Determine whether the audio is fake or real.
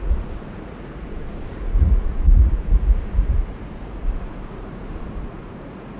fake